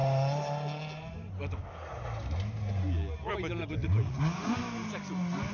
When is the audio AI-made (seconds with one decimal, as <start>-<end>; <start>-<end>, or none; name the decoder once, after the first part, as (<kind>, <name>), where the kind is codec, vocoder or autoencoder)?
3.8-4.5 (vocoder, Vocos)